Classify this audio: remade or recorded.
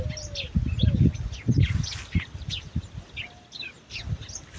recorded